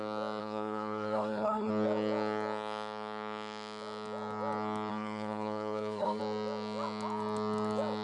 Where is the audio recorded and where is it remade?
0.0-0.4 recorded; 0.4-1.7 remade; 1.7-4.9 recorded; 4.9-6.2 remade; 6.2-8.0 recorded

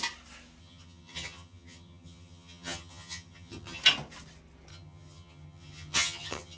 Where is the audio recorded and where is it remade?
0.0-0.6 recorded; 0.6-3.8 remade; 3.8-4.7 recorded; 4.7-6.6 remade